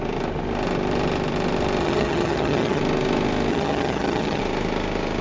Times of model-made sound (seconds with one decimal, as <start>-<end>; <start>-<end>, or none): 1.8-2.8; 3.5-4.4